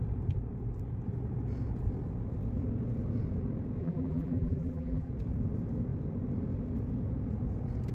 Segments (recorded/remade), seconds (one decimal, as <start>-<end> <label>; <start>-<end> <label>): 0.0-3.8 recorded; 3.8-5.1 remade; 5.1-7.9 recorded